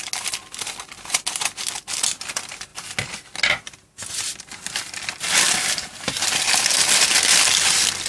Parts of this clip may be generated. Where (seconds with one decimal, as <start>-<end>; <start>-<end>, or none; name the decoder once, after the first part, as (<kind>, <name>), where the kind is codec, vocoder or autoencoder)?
none